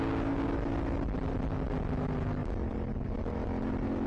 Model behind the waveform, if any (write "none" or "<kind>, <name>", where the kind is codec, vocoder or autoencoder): none